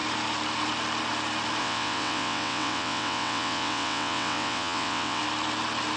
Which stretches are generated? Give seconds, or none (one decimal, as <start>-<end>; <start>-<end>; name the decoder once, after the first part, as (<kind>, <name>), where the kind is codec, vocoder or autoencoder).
1.6-5.2 (vocoder, WaveNeXt)